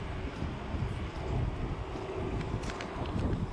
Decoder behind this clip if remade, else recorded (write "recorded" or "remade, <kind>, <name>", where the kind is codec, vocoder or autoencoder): recorded